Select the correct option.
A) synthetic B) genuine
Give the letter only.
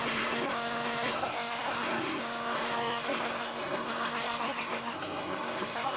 A